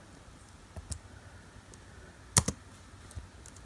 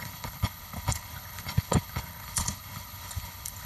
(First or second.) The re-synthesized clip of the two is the second